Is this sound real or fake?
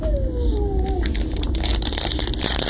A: real